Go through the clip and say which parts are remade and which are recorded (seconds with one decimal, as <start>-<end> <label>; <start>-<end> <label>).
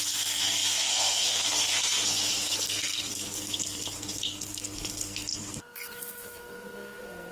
0.0-7.3 remade